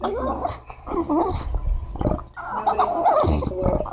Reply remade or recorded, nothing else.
recorded